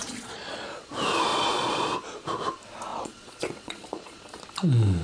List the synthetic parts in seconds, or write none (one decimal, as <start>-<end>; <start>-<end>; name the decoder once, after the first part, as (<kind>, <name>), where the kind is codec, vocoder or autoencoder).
0.0-0.9 (vocoder, Vocos); 1.3-1.9; 2.9-4.4